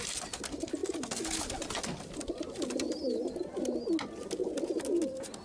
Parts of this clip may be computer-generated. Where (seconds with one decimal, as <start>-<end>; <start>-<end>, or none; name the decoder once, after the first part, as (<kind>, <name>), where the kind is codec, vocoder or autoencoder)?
none

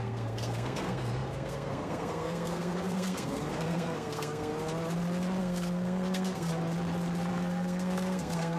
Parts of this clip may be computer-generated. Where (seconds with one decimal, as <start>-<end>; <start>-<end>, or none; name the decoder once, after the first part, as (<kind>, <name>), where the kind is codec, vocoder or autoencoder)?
0.0-4.5 (codec, SNAC); 5.4-6.5; 7.3-8.6

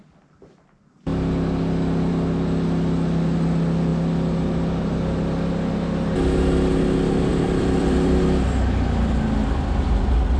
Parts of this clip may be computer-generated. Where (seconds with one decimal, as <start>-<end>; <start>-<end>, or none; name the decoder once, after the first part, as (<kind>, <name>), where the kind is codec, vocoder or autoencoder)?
7.3-8.2 (vocoder, BigVGAN v2)